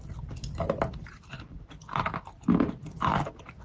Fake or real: real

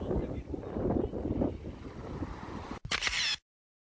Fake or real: real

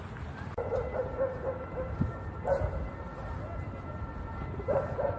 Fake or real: real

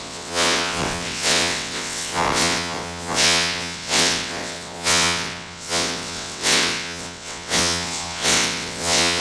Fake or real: fake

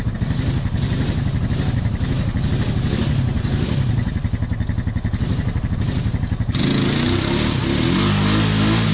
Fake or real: real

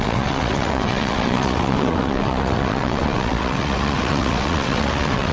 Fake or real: fake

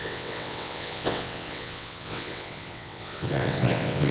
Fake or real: fake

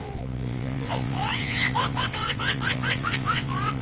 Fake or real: fake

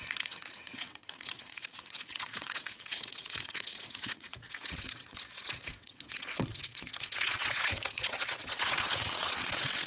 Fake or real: fake